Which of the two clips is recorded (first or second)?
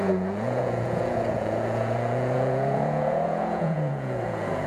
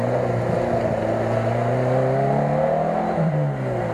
second